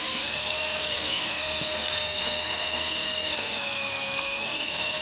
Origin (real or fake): fake